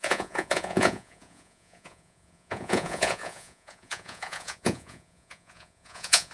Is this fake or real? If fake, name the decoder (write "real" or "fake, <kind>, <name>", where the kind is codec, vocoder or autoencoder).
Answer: fake, vocoder, Vocos